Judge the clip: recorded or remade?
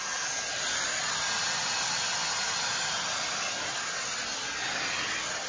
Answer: recorded